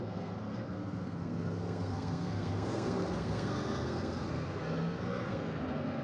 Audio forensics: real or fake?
fake